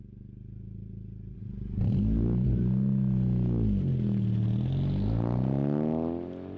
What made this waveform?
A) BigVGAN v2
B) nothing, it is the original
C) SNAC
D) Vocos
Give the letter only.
B